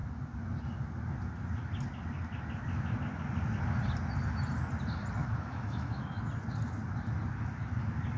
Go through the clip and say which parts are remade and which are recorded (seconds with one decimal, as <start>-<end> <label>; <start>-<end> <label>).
0.0-5.2 recorded; 5.2-6.2 remade; 6.2-8.2 recorded